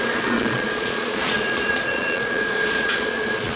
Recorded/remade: remade